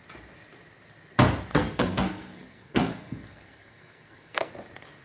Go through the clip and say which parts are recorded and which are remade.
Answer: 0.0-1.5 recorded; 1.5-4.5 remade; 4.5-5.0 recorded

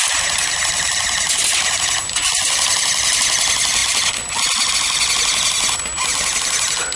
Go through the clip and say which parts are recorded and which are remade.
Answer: 0.0-7.0 recorded

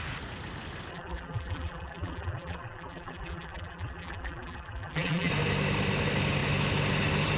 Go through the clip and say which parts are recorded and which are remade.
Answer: 0.0-0.9 recorded; 0.9-5.3 remade; 5.3-7.4 recorded